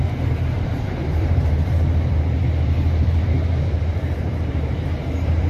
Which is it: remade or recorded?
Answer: remade